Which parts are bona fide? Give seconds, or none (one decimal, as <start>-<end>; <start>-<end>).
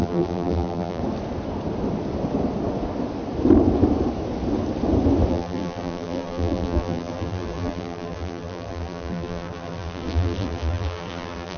1.0-5.3